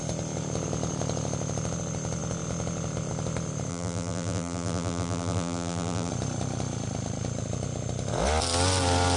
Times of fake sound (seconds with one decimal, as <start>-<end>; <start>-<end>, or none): 3.7-6.1